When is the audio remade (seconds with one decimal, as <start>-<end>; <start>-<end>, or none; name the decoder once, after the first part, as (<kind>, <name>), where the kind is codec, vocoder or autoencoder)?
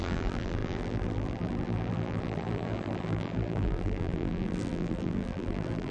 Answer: 0.0-5.9 (vocoder, BigVGAN v2)